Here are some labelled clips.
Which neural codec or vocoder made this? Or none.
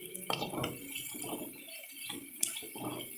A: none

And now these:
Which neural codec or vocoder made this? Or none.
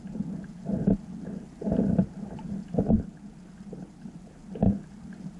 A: none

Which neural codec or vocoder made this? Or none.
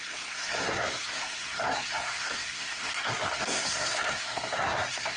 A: codec, SNAC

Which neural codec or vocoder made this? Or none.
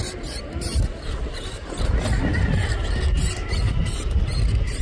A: none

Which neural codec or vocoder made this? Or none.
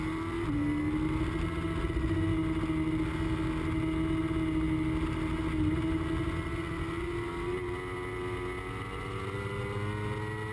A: none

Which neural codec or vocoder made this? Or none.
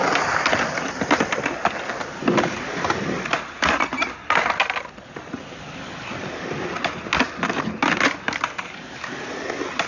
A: none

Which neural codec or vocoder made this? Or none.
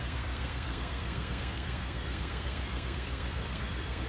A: codec, SNAC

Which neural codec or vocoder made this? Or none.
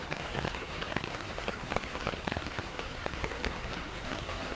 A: codec, SNAC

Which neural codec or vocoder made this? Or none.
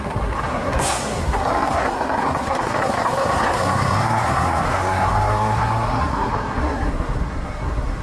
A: codec, SNAC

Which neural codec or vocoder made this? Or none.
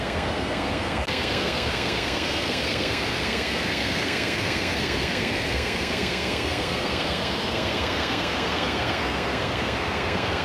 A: codec, SNAC